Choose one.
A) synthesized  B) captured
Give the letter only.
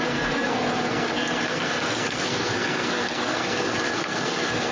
A